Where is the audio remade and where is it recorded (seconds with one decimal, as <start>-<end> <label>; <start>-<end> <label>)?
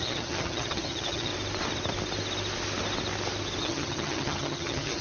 0.0-1.3 remade; 1.3-3.6 recorded; 3.6-5.0 remade